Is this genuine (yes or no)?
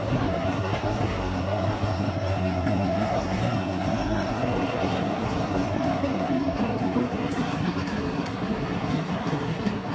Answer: no